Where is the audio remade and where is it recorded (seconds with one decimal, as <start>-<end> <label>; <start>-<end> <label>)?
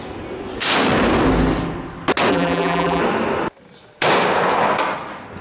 0.0-2.3 recorded; 2.3-3.0 remade; 3.0-5.4 recorded